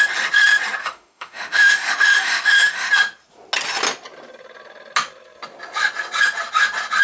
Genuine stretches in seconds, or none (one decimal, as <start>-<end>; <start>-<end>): 0.0-0.8; 2.9-7.0